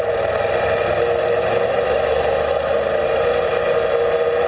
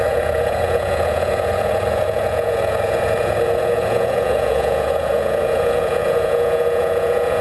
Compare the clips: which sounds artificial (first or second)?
second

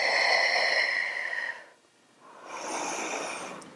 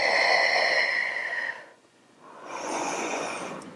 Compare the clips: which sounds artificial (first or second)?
second